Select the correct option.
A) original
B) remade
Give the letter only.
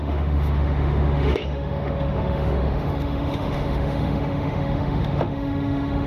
B